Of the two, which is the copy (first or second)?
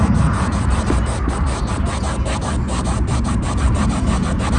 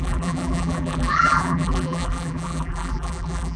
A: second